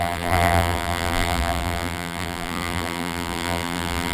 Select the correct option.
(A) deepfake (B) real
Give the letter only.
A